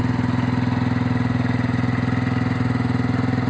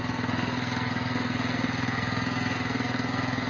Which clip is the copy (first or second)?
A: second